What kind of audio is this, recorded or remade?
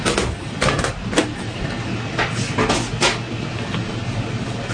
recorded